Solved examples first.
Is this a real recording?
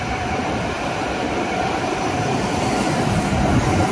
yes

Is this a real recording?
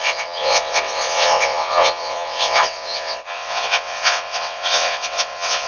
no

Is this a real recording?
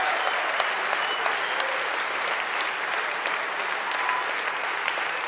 yes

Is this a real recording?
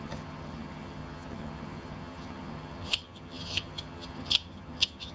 no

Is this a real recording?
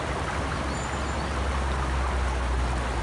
yes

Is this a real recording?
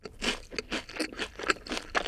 yes